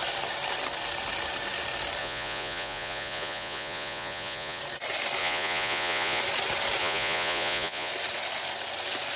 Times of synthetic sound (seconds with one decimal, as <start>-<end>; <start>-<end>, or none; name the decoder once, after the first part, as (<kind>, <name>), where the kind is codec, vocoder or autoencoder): 2.0-4.6 (vocoder, Vocos); 5.2-6.2; 6.8-7.9